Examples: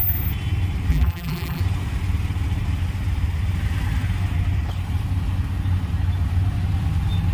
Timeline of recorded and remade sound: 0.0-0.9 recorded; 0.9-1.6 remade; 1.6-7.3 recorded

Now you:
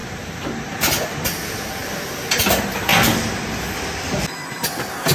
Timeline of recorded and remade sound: 0.0-1.0 remade; 1.0-1.8 recorded; 1.8-2.4 remade; 2.4-5.1 recorded

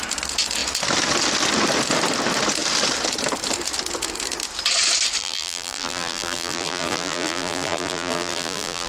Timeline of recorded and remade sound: 0.0-5.2 recorded; 5.2-8.9 remade

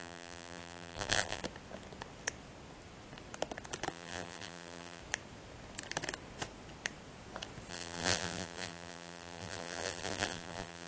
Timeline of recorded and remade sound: 0.0-1.4 remade; 1.4-3.9 recorded; 3.9-5.0 remade; 5.0-7.7 recorded; 7.7-10.9 remade

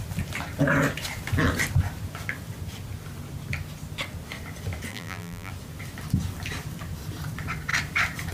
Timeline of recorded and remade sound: 0.0-4.9 recorded; 4.9-5.5 remade; 5.5-8.3 recorded

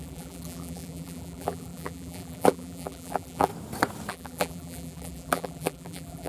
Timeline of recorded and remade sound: 0.0-3.5 remade; 3.5-4.1 recorded; 4.1-6.3 remade